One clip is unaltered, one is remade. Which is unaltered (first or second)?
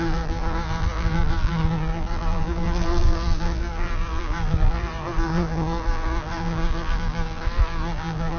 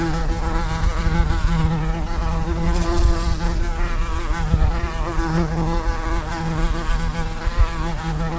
second